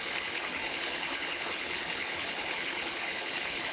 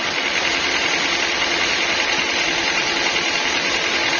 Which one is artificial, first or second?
first